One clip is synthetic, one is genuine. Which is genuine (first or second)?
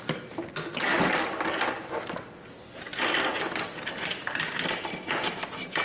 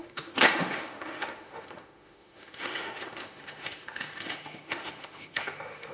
first